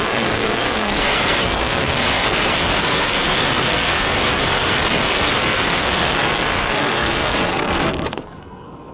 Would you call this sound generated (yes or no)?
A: yes